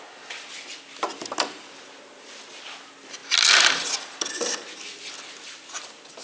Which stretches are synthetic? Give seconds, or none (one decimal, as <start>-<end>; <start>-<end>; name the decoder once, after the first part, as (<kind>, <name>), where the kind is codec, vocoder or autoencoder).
none